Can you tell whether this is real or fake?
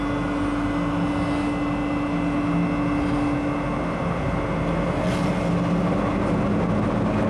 real